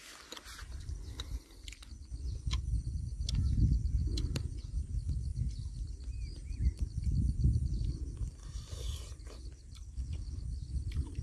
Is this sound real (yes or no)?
yes